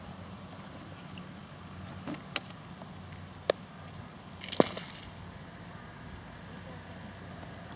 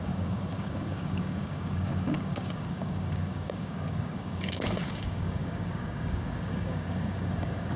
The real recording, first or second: first